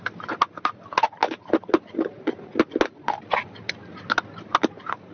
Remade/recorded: recorded